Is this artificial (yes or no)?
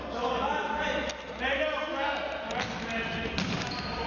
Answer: no